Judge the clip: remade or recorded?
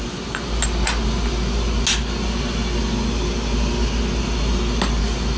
recorded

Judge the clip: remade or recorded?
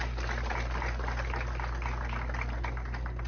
recorded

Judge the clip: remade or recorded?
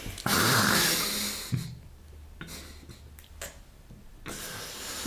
recorded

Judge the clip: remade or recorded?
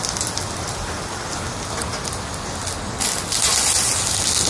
recorded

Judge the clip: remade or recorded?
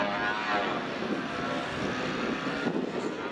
recorded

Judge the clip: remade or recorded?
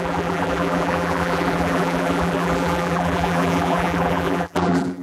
remade